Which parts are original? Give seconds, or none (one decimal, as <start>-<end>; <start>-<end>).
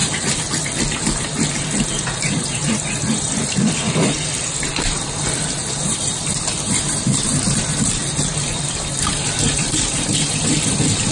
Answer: 8.0-8.7